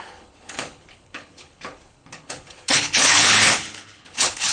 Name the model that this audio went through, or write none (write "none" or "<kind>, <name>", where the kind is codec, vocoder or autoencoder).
codec, HILCodec